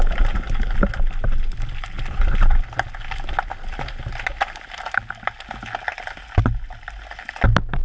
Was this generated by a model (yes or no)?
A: no